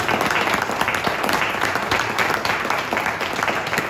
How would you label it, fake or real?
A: real